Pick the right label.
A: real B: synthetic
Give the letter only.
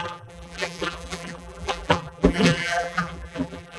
B